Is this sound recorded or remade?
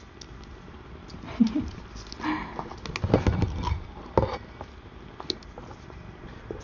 recorded